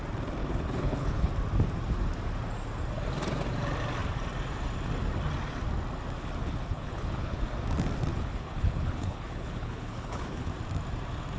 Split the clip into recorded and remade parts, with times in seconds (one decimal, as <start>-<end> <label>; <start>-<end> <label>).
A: 0.0-0.4 recorded; 0.4-1.3 remade; 1.3-6.4 recorded; 6.4-7.4 remade; 7.4-8.1 recorded; 8.1-10.5 remade; 10.5-11.4 recorded